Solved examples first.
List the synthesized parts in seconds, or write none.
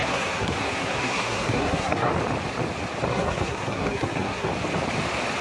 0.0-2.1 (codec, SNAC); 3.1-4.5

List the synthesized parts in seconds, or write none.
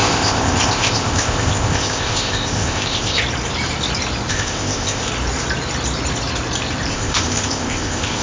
0.0-3.2 (codec, ZipCodec); 4.3-5.1; 6.9-8.2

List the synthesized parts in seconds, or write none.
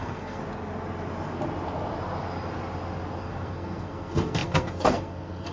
0.0-0.4 (codec, SNAC); 3.2-5.5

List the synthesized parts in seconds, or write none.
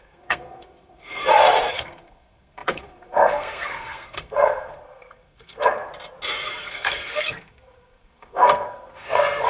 0.0-1.2 (codec, SNAC); 1.7-5.9; 6.6-9.5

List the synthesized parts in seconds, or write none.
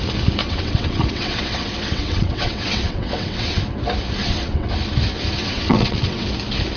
0.4-3.6 (vocoder, WaveNeXt); 4.2-4.7; 5.4-6.3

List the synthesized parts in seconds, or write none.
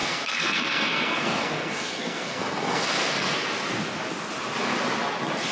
0.0-3.3 (codec, SNAC)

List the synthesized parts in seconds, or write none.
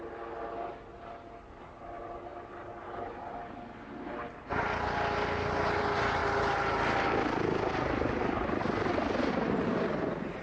none